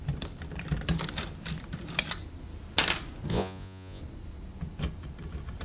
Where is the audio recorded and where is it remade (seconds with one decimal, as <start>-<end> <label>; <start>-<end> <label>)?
0.0-3.3 recorded; 3.3-4.0 remade; 4.0-5.6 recorded